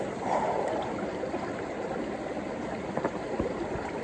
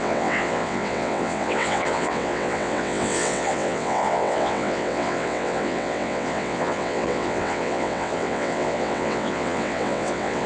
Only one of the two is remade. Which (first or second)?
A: second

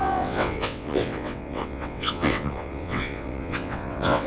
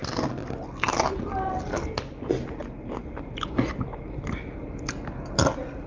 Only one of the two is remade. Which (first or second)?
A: first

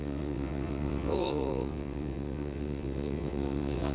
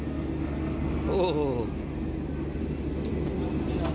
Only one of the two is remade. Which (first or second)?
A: first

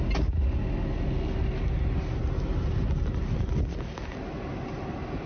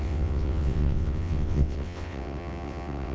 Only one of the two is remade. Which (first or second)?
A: second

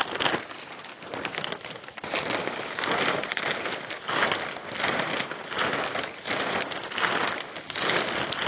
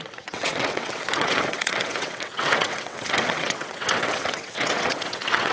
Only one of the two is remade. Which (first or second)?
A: second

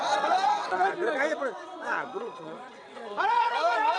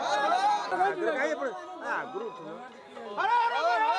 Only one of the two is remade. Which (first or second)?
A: first